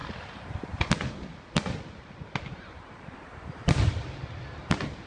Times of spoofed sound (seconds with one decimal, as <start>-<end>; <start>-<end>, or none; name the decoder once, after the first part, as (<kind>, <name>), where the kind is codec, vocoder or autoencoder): 2.5-5.1 (vocoder, BigVGAN v2)